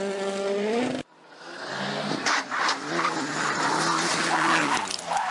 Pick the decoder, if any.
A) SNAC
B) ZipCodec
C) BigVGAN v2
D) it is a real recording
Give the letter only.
D